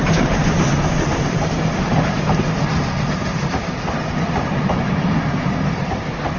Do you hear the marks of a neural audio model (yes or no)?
no